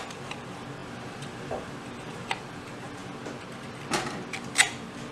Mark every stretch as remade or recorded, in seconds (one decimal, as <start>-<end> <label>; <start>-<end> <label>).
0.0-3.0 remade; 3.0-4.3 recorded; 4.3-5.1 remade